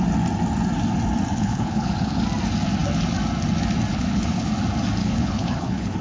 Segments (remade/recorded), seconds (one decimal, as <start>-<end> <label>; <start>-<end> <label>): 0.0-1.3 recorded; 1.3-2.2 remade; 2.2-3.9 recorded; 3.9-4.5 remade; 4.5-5.0 recorded; 5.0-6.0 remade